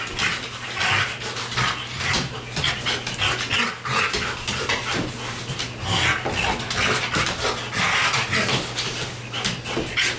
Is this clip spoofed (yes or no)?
no